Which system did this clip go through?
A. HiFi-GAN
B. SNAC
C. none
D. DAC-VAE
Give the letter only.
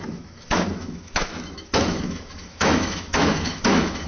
D